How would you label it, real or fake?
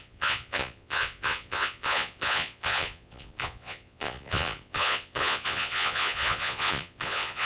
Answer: fake